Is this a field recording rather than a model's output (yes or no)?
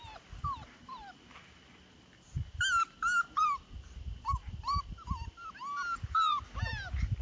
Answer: yes